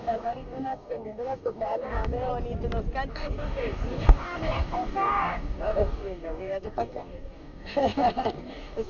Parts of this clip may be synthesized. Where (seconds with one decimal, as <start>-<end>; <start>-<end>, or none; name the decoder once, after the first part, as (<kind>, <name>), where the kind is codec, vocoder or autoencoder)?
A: 0.0-2.3 (codec, DAC); 3.1-8.9